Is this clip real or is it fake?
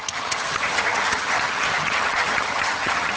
fake